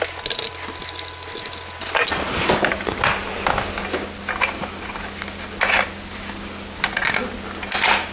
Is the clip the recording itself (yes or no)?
yes